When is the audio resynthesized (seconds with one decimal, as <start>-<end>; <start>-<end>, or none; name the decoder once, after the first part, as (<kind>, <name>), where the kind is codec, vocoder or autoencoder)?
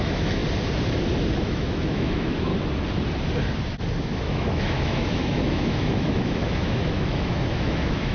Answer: 0.0-0.4 (autoencoder, DAC-VAE); 1.4-2.5; 4.0-8.1